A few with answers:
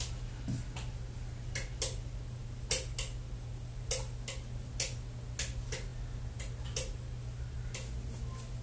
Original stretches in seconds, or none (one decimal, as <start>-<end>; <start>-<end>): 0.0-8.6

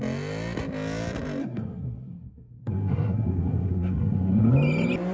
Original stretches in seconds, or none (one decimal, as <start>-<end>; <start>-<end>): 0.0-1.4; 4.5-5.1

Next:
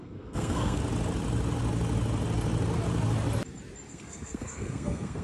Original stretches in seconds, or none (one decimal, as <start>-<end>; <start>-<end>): 0.8-3.9